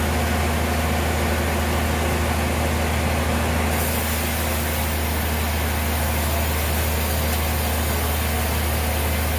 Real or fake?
real